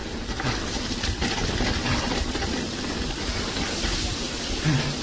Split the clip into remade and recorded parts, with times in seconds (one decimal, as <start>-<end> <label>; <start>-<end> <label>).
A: 0.0-5.0 recorded

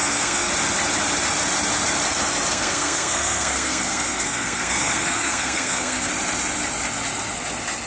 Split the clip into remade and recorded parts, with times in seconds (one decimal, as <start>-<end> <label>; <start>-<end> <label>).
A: 0.0-0.5 remade; 0.5-2.5 recorded; 2.5-6.1 remade; 6.1-7.9 recorded

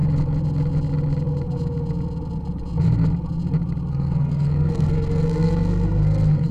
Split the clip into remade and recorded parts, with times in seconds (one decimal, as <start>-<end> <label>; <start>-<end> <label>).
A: 0.0-3.9 recorded; 3.9-6.5 remade

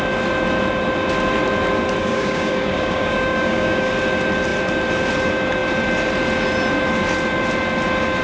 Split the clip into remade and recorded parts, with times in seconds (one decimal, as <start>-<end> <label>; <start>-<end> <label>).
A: 0.0-2.0 recorded; 2.0-3.9 remade; 3.9-8.2 recorded

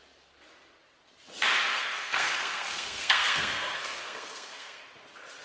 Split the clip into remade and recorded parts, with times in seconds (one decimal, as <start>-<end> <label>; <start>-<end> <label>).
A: 0.0-1.7 recorded; 1.7-4.8 remade; 4.8-5.4 recorded